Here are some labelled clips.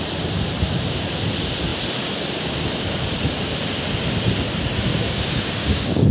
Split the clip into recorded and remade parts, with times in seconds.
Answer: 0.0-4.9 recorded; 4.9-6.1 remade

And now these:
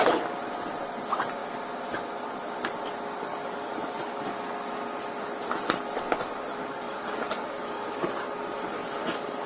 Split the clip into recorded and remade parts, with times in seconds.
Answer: 0.0-3.3 recorded; 3.3-4.4 remade; 4.4-6.6 recorded; 6.6-8.1 remade; 8.1-8.7 recorded; 8.7-9.5 remade

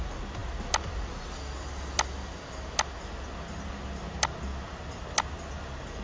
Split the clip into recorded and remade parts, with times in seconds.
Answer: 0.0-6.0 recorded

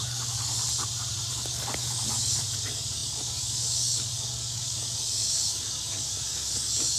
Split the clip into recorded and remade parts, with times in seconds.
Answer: 0.0-0.6 remade; 0.6-1.3 recorded; 1.3-7.0 remade